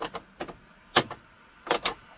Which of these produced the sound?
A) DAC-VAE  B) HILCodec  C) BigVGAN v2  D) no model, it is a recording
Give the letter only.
D